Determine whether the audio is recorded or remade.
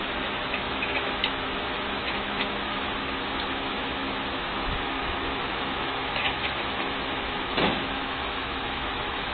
remade